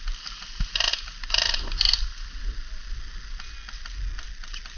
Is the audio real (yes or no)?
yes